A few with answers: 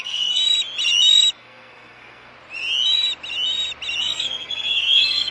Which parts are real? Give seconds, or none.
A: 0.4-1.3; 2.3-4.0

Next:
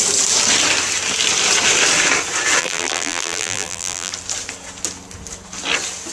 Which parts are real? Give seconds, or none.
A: 0.0-2.6; 4.1-6.1